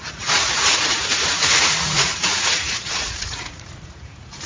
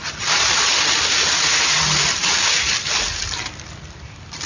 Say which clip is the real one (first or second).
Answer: second